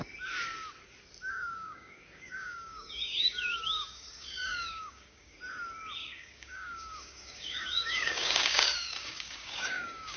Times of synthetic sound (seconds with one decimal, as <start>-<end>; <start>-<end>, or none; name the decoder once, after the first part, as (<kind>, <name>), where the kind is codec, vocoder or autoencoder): 1.3-5.4 (codec, DAC); 6.0-10.2